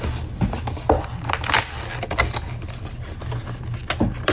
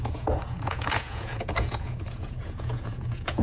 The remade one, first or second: second